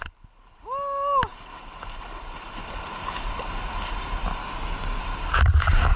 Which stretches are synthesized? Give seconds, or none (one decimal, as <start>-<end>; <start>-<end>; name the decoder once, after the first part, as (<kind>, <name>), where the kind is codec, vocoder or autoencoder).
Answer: 4.4-5.0 (codec, DAC)